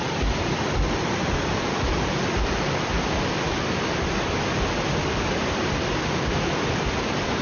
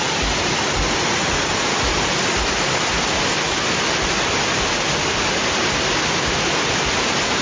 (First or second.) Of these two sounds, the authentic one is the second